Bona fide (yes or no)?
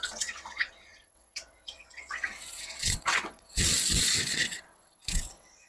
no